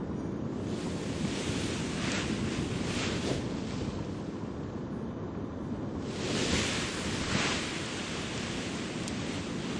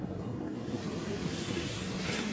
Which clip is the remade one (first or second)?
second